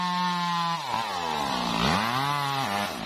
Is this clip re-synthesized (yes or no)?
no